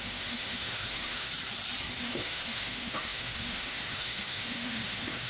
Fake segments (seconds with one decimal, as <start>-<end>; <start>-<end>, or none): 0.0-1.3; 2.0-5.3